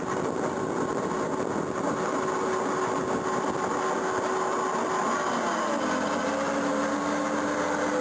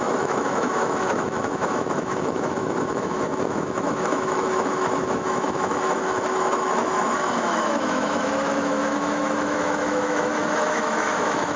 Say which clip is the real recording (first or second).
first